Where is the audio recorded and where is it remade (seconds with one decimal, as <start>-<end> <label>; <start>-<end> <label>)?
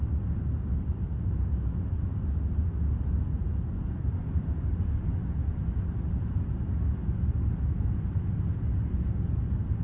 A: 0.0-9.8 recorded